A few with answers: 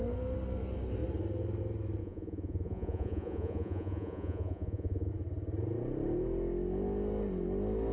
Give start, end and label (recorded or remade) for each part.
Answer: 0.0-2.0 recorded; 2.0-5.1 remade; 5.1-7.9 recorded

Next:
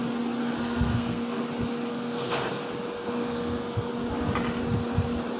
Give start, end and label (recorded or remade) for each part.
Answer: 0.0-0.4 recorded; 0.4-1.4 remade; 1.4-1.9 recorded; 1.9-2.6 remade; 2.6-3.0 recorded; 3.0-3.9 remade; 3.9-5.4 recorded

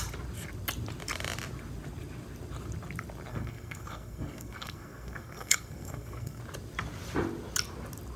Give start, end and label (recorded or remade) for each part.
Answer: 0.0-3.3 recorded; 3.3-6.4 remade; 6.4-8.2 recorded

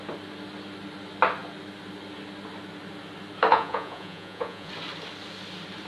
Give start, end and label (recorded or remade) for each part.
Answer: 0.0-3.5 recorded; 3.5-4.7 remade; 4.7-5.9 recorded

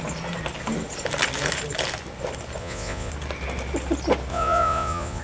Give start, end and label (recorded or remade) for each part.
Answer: 0.0-2.6 recorded; 2.6-3.1 remade; 3.1-4.3 recorded; 4.3-5.2 remade

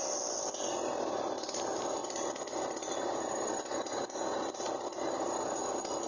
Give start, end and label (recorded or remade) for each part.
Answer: 0.0-6.1 recorded

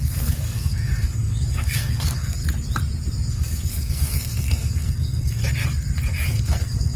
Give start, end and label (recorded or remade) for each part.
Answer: 0.0-2.4 remade; 2.4-3.3 recorded; 3.3-5.4 remade; 5.4-6.4 recorded; 6.4-7.0 remade